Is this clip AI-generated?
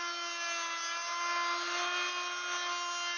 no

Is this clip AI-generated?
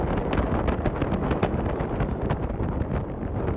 no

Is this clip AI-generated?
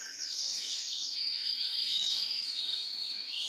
yes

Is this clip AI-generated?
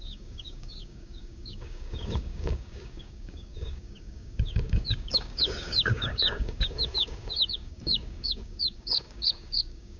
yes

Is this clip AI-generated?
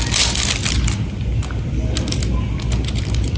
no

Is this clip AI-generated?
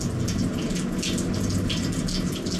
no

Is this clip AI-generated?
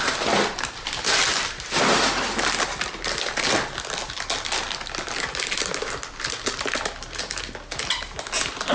no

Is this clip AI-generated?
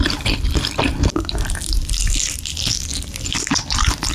no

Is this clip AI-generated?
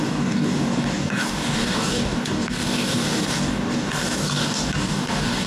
yes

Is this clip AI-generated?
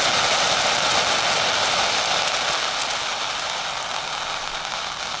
no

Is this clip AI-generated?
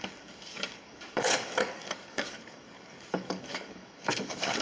yes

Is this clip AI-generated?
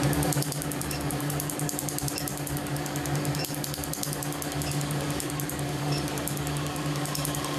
yes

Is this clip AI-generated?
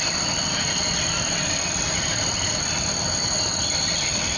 no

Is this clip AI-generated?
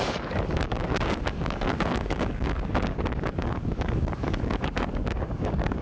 yes